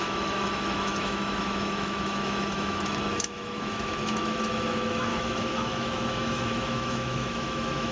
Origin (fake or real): fake